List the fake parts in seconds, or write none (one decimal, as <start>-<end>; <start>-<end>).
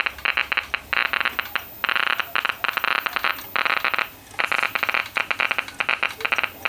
none